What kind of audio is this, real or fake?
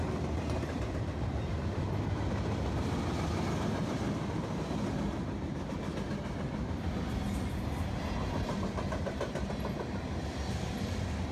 real